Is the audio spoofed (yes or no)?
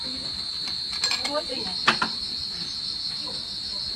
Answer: no